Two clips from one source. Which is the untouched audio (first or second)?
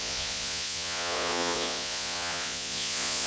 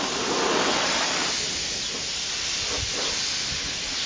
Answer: second